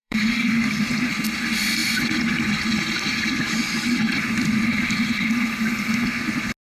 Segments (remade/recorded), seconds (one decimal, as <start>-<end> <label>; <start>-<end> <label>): 0.0-0.8 remade; 0.8-6.7 recorded